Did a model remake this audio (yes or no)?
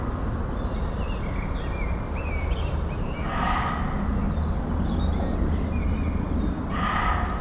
no